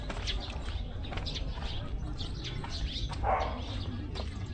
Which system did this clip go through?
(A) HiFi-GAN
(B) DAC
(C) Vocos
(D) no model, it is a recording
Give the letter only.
D